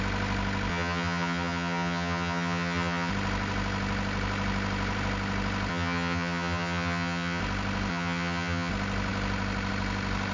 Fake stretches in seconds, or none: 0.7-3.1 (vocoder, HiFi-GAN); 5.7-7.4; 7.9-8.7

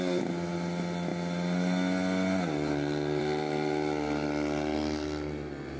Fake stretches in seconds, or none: none

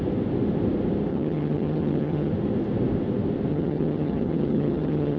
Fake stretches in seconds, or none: 1.1-2.3 (vocoder, HiFi-GAN); 3.5-5.2